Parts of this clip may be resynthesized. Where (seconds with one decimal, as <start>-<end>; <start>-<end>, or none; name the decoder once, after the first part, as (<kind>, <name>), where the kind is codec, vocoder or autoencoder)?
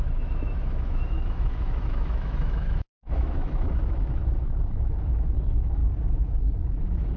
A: 0.0-5.8 (autoencoder, DAC-VAE); 6.6-7.2